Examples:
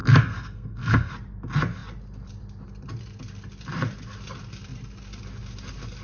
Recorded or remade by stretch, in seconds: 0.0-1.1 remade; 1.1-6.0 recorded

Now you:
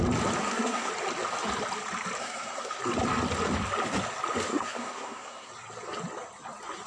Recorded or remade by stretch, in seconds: 0.0-0.4 recorded; 0.4-0.9 remade; 0.9-2.2 recorded; 2.2-2.8 remade; 2.8-4.5 recorded; 4.5-5.5 remade; 5.5-6.9 recorded